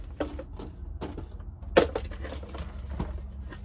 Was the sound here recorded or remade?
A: recorded